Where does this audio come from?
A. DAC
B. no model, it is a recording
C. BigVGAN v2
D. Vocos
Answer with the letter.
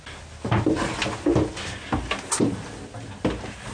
B